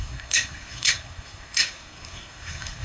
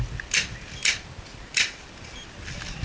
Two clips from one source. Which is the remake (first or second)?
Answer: first